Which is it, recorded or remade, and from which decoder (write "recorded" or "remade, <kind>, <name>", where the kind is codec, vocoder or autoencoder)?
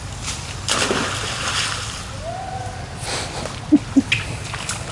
recorded